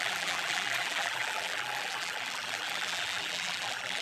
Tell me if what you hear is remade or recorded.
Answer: remade